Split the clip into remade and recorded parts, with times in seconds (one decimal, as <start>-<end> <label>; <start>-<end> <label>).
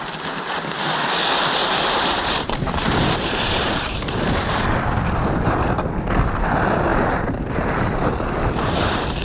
0.0-1.6 recorded; 1.6-4.6 remade; 4.6-6.9 recorded; 6.9-9.2 remade